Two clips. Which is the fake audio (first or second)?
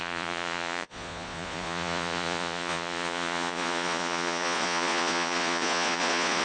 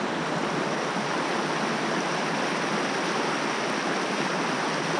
first